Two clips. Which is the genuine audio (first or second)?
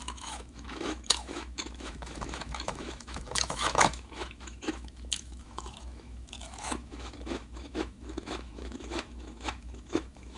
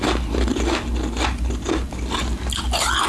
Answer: second